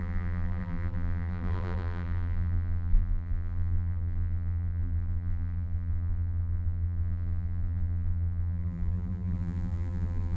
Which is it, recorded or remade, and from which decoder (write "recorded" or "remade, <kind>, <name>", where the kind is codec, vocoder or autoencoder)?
remade, vocoder, BigVGAN v2